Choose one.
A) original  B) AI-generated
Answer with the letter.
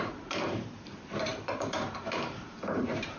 B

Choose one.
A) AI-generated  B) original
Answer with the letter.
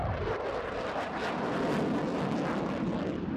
B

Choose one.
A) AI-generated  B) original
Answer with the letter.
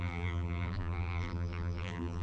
A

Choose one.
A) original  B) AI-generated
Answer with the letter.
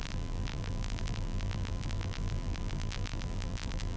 B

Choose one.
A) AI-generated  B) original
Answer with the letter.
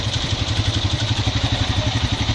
A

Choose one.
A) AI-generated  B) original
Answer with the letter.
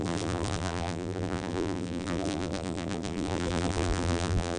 A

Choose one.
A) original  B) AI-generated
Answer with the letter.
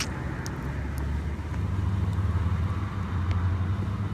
A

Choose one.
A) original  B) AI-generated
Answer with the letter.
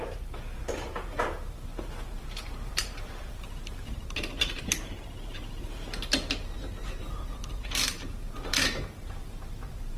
B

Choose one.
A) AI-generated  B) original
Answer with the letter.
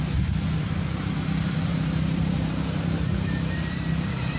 A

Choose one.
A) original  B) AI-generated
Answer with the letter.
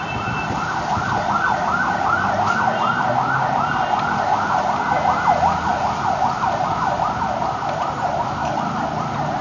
A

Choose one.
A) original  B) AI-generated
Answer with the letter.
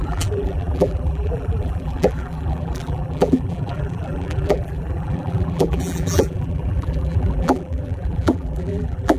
B